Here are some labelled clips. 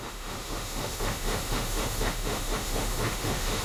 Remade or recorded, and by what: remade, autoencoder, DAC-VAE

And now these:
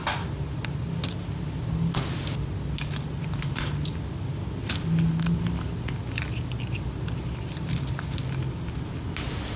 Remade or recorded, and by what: recorded